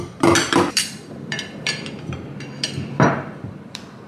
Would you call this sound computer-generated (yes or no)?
yes